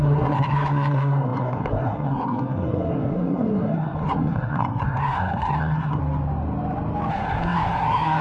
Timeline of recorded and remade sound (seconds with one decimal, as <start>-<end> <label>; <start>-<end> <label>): 0.0-6.0 remade; 6.0-7.1 recorded; 7.1-8.2 remade